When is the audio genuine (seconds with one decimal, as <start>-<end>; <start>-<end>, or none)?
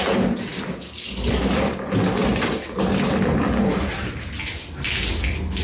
0.0-5.6